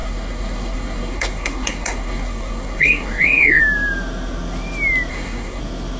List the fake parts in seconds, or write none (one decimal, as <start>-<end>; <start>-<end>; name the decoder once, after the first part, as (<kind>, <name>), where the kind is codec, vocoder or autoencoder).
0.0-3.6 (codec, SNAC); 5.1-5.6